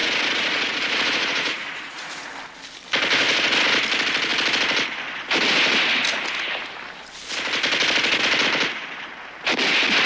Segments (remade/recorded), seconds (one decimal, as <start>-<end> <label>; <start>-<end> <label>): 0.0-2.3 remade; 2.3-10.1 recorded